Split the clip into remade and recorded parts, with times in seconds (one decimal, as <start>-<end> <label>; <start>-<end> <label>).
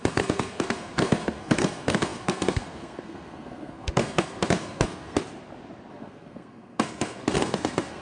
0.0-5.2 remade; 5.2-5.9 recorded; 5.9-8.0 remade